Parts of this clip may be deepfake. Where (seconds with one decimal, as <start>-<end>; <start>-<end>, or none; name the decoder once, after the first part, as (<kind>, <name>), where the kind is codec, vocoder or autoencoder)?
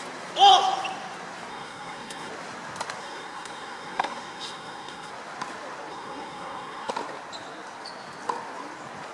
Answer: 1.5-2.3 (codec, SNAC); 3.0-5.1; 5.9-6.9